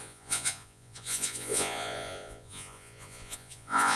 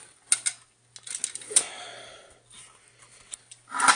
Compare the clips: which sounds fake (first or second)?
first